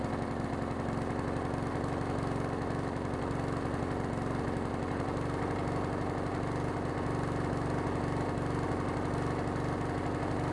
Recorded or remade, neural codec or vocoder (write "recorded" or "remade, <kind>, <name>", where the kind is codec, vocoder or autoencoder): recorded